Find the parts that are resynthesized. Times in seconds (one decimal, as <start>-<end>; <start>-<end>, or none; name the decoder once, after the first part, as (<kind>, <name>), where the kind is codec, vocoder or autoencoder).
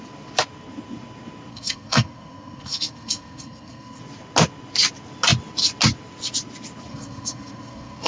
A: 1.5-4.0 (codec, SNAC); 6.9-8.1